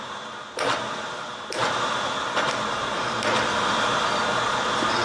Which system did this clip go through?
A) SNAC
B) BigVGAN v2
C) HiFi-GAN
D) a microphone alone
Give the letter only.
B